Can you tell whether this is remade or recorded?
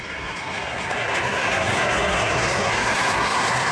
remade